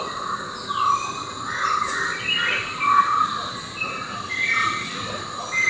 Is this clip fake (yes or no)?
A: no